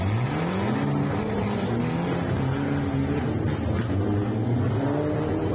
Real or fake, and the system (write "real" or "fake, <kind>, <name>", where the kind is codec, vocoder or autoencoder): real